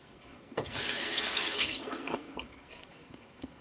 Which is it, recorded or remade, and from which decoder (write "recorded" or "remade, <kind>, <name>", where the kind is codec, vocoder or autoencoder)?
remade, codec, SNAC